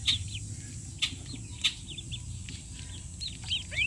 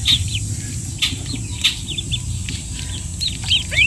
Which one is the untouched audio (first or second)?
first